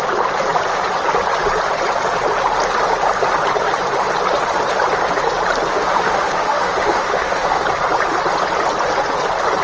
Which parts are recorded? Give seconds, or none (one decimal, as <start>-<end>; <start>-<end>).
0.0-5.7; 7.6-9.6